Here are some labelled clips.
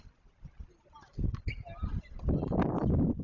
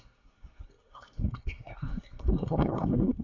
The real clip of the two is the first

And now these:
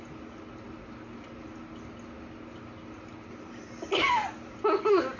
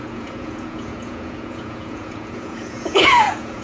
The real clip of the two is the first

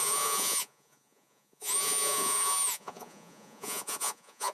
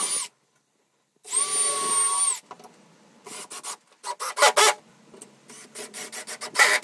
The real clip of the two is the second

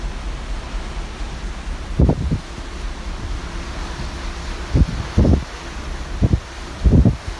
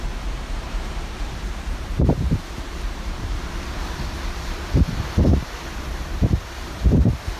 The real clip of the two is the first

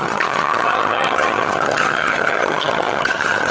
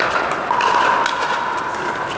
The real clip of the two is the second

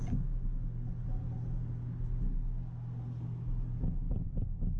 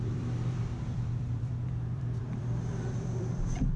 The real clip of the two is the first